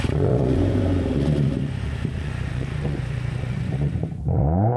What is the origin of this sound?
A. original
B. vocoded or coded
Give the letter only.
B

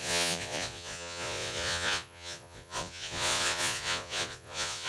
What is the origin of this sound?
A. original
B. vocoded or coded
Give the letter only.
B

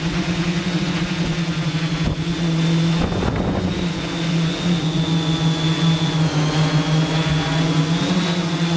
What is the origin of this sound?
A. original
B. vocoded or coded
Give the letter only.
B